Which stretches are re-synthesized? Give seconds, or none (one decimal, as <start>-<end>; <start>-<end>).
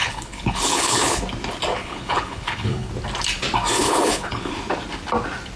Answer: 0.0-1.2; 1.7-2.9; 3.8-4.5